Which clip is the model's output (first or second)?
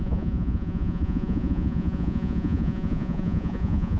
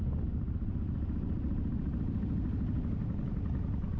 first